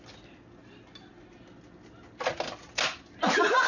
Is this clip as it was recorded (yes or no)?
yes